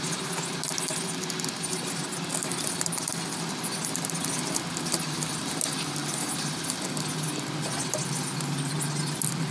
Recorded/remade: recorded